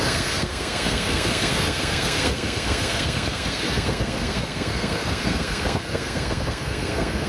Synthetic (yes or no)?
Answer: yes